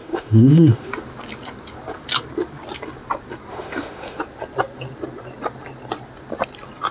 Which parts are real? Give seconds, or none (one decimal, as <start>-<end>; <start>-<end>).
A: 0.9-3.5; 4.2-6.9